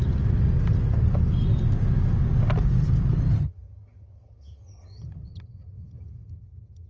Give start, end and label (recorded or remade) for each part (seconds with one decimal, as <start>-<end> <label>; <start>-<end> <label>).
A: 0.0-3.4 recorded; 3.4-6.9 remade